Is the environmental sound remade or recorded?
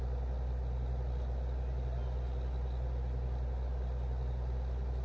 recorded